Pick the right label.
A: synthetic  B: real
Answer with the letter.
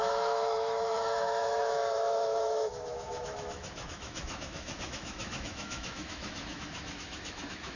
A